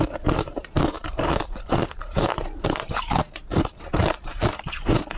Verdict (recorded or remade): remade